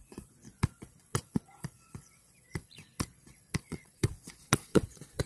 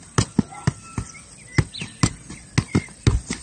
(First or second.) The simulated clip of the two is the first